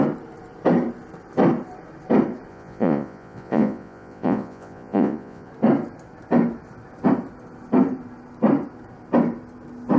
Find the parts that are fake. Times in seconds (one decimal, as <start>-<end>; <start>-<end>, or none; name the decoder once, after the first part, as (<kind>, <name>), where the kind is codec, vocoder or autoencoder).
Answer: 2.5-5.5 (vocoder, Vocos)

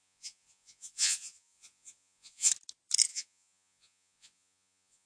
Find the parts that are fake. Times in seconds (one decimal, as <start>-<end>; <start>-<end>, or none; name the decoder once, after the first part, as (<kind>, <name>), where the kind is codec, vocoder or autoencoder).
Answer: 0.0-2.5 (vocoder, Vocos); 3.1-5.1